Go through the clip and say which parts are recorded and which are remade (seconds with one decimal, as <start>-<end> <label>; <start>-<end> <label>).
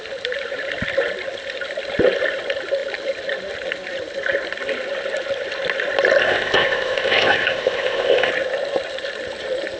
0.0-6.2 recorded; 6.2-8.3 remade; 8.3-9.8 recorded